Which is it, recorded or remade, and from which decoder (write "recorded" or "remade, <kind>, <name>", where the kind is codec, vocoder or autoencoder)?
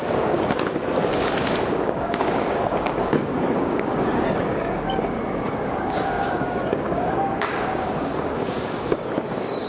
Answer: remade, codec, DAC